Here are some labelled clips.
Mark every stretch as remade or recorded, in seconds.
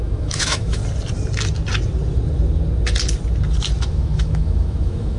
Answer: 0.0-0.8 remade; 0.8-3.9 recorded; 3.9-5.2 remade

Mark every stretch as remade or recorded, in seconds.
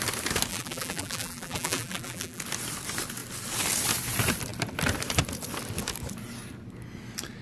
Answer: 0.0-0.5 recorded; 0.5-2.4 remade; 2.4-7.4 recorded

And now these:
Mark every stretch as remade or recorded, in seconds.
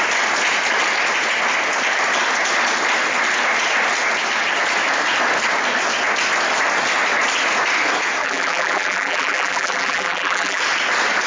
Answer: 0.0-8.2 recorded; 8.2-10.6 remade; 10.6-11.3 recorded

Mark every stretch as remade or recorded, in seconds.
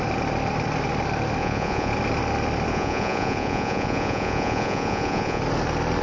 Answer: 0.0-1.4 recorded; 1.4-1.9 remade; 1.9-2.7 recorded; 2.7-5.4 remade; 5.4-6.0 recorded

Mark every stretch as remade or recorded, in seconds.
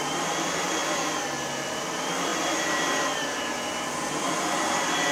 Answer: 0.0-0.8 remade; 0.8-1.4 recorded; 1.4-2.3 remade; 2.3-3.9 recorded; 3.9-5.1 remade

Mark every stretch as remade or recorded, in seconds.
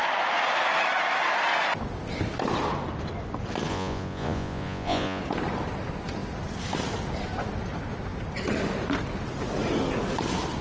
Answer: 0.0-3.7 recorded; 3.7-5.2 remade; 5.2-10.6 recorded